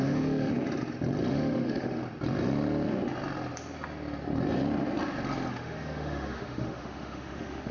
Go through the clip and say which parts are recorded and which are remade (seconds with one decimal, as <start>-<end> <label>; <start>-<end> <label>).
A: 0.0-0.5 remade; 0.5-1.3 recorded; 1.3-2.0 remade; 2.0-5.5 recorded; 5.5-7.7 remade